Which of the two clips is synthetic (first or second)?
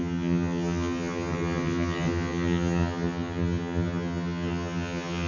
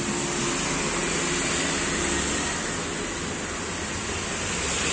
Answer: first